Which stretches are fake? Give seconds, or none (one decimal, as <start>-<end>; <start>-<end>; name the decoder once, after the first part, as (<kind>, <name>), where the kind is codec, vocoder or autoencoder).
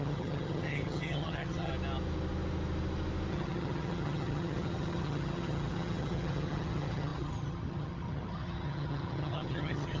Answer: 0.0-1.7 (vocoder, HiFi-GAN); 3.3-10.0